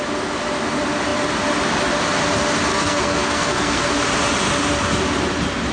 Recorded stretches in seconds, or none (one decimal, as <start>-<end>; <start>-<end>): 0.0-2.7; 3.9-5.7